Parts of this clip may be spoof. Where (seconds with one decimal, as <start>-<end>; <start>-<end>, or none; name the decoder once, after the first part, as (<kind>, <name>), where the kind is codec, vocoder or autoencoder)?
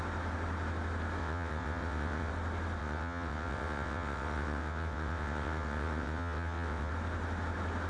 1.2-2.3 (vocoder, WaveNeXt); 2.8-6.9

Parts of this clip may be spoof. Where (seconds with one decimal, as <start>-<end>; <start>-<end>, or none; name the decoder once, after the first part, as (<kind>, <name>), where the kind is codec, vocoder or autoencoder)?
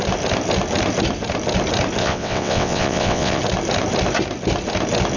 2.0-3.4 (vocoder, WaveNeXt)